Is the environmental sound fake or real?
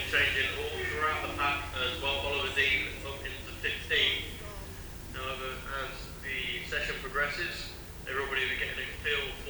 real